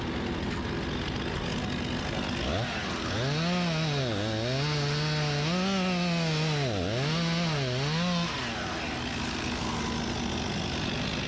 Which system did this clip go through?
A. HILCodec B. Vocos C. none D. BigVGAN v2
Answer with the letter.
C